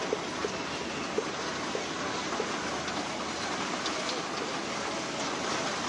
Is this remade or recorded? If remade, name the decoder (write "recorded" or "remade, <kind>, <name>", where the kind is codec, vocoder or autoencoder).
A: recorded